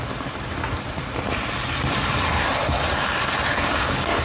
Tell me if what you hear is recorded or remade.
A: recorded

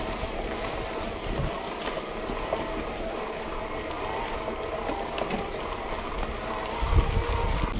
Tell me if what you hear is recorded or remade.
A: recorded